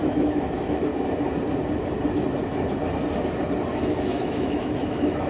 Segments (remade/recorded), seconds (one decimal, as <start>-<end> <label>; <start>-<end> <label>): 0.0-0.9 remade; 0.9-3.9 recorded; 3.9-5.3 remade